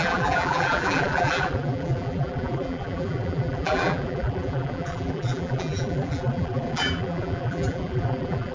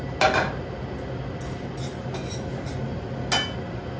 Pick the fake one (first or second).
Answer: first